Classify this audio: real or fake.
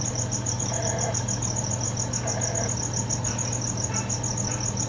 real